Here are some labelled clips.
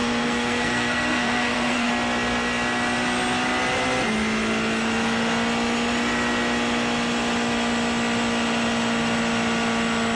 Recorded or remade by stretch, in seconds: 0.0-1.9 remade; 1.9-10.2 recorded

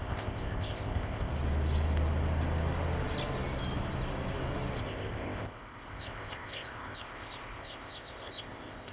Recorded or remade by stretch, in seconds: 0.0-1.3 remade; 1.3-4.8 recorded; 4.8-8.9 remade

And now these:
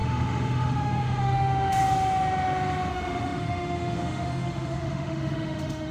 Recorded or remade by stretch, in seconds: 0.0-1.8 remade; 1.8-2.9 recorded; 2.9-5.9 remade